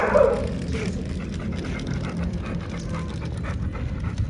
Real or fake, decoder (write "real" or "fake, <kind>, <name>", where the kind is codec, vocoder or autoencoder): real